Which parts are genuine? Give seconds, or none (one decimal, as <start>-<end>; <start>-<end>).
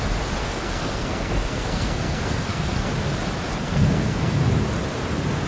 0.0-0.4; 2.9-3.5; 4.4-5.5